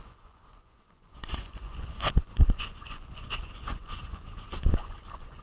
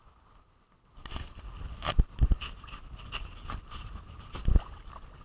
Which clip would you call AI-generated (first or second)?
first